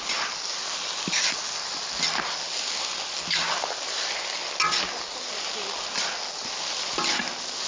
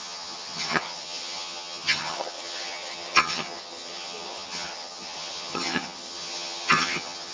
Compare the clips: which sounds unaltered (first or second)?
first